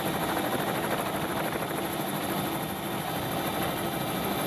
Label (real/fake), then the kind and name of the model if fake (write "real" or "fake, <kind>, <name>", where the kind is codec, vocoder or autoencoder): real